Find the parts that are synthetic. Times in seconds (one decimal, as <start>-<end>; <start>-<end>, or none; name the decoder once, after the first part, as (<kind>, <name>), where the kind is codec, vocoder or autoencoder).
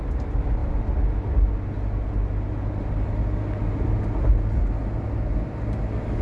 none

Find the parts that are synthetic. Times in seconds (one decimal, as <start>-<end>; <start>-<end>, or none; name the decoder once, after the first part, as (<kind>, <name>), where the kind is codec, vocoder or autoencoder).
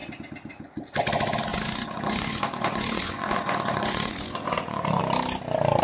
1.5-5.0 (vocoder, Vocos)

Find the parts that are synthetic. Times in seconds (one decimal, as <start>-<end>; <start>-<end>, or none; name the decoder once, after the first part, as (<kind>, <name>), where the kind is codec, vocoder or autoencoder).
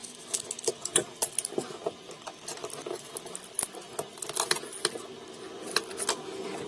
none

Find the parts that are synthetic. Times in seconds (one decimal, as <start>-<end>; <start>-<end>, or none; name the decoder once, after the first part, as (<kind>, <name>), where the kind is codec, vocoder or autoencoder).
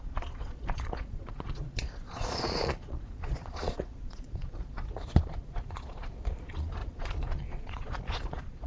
0.0-8.7 (vocoder, Vocos)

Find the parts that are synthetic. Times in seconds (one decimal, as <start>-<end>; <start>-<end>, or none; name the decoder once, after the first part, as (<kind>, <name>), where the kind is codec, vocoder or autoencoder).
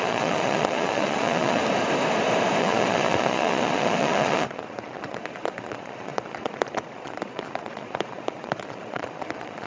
0.0-1.6 (vocoder, Vocos); 2.6-9.7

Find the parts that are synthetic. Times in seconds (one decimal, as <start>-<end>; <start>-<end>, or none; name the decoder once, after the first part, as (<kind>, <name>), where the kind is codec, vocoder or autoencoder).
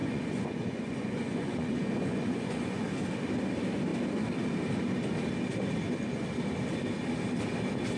0.0-2.8 (vocoder, Vocos)